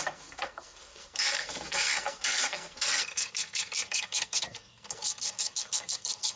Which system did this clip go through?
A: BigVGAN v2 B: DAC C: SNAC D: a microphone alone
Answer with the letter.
C